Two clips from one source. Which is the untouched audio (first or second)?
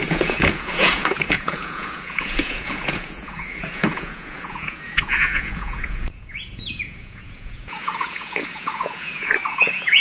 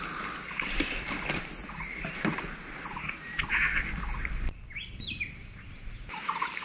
second